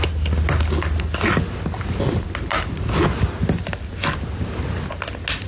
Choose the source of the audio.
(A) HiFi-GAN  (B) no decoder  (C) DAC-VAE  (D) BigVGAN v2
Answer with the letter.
B